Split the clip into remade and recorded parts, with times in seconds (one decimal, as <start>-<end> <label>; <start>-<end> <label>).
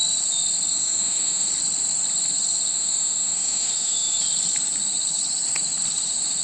0.0-0.7 recorded; 0.7-1.5 remade; 1.5-2.7 recorded; 2.7-4.2 remade; 4.2-6.4 recorded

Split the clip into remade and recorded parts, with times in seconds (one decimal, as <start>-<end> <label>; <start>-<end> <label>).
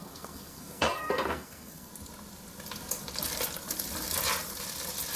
0.0-1.9 remade; 1.9-5.2 recorded